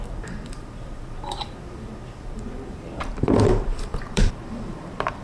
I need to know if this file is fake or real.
fake